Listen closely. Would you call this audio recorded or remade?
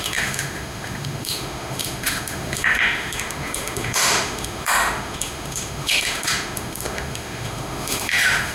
remade